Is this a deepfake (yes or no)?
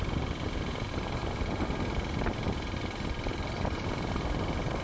no